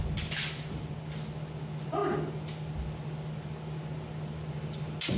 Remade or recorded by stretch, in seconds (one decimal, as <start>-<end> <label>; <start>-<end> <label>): 0.0-5.2 recorded